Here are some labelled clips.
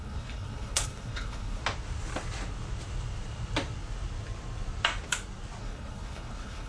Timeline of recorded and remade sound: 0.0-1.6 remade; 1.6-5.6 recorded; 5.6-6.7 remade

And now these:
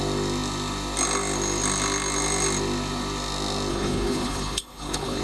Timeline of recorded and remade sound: 0.0-3.7 recorded; 3.7-5.2 remade

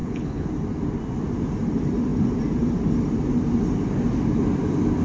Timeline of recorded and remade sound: 0.0-0.5 remade; 0.5-5.0 recorded